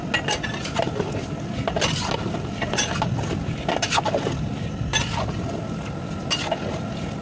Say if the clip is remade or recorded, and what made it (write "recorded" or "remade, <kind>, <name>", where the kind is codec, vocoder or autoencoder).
recorded